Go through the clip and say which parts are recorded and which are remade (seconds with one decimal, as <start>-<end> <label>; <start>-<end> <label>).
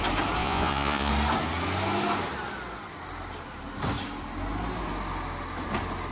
0.0-0.4 recorded; 0.4-1.1 remade; 1.1-6.1 recorded